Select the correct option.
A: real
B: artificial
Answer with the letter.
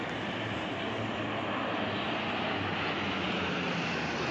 A